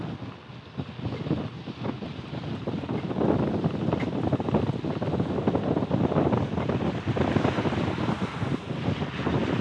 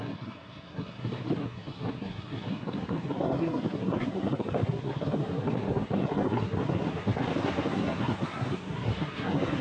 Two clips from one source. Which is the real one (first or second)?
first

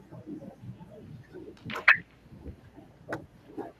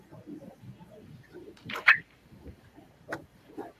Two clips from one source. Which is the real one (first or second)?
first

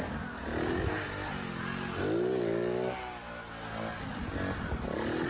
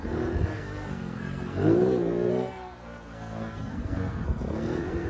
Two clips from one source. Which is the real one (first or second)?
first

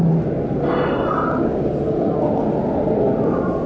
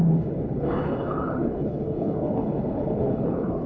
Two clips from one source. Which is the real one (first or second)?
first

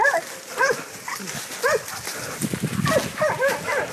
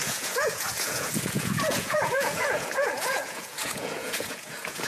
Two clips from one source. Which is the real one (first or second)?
first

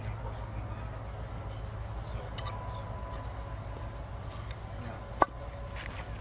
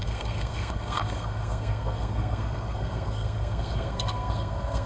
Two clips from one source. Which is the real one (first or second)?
first